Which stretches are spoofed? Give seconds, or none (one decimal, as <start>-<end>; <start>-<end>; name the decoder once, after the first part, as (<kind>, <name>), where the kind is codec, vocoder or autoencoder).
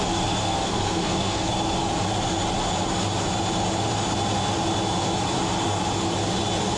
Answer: 0.4-1.5 (codec, SNAC)